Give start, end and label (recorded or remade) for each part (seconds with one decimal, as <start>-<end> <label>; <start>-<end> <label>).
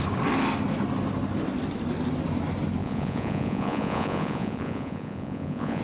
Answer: 0.0-2.8 recorded; 2.8-5.8 remade